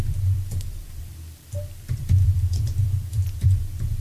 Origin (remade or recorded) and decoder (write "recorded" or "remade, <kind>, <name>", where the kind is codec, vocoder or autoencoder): remade, vocoder, BigVGAN v2